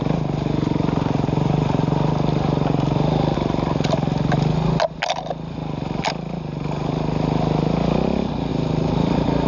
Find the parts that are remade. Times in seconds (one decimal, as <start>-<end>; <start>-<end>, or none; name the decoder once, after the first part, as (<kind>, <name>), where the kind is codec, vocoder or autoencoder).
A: 8.5-9.5 (vocoder, BigVGAN v2)